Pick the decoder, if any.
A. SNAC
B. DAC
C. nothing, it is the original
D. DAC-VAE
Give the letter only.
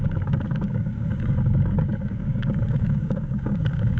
B